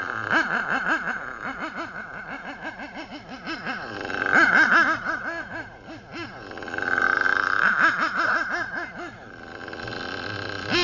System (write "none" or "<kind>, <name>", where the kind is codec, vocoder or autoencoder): none